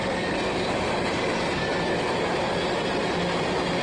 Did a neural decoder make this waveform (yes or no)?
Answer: no